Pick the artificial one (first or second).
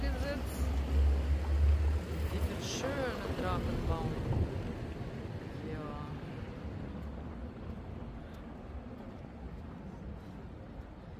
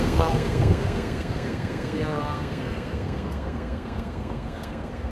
second